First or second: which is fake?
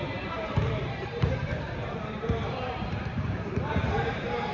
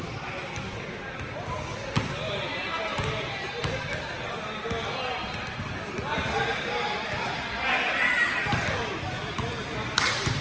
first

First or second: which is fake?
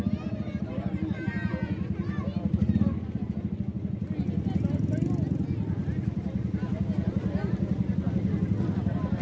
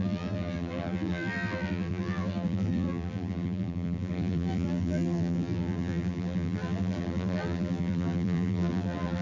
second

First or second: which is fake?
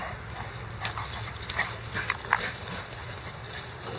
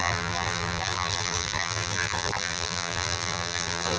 second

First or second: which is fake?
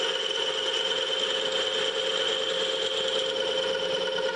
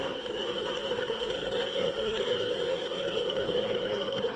second